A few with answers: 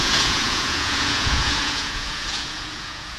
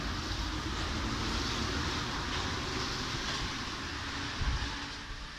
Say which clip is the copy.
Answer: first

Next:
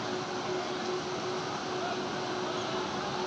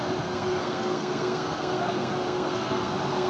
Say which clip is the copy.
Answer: second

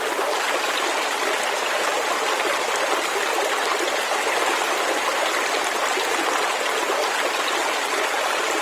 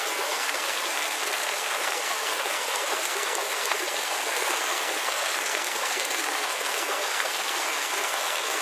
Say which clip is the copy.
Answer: second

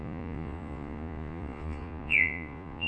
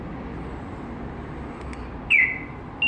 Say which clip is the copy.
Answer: first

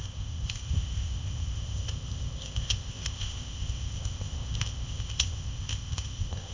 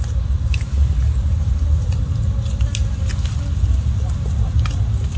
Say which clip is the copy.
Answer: first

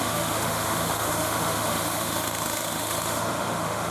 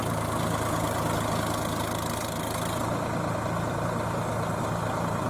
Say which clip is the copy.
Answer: first